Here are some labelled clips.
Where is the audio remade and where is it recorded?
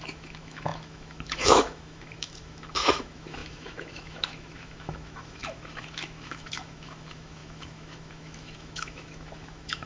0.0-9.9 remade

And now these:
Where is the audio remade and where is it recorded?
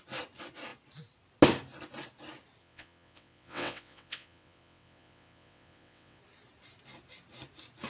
0.0-2.6 recorded; 2.6-6.2 remade; 6.2-7.9 recorded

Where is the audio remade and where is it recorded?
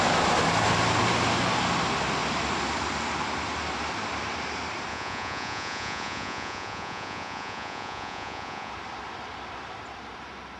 0.0-4.9 recorded; 4.9-8.7 remade; 8.7-10.6 recorded